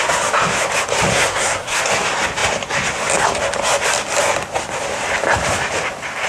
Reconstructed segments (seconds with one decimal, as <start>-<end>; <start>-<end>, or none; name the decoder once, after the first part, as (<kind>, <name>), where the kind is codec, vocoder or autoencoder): 1.1-1.8 (codec, SNAC)